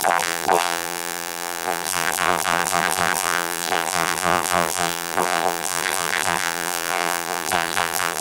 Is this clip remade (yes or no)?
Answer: yes